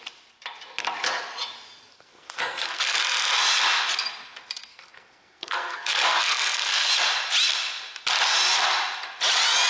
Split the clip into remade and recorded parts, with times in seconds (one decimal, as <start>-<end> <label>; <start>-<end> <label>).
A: 0.0-1.9 recorded; 1.9-3.0 remade; 3.0-4.7 recorded; 4.7-6.9 remade; 6.9-9.7 recorded